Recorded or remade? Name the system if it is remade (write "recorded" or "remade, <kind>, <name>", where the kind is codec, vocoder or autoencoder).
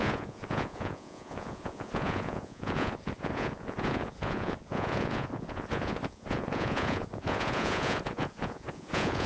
remade, vocoder, Vocos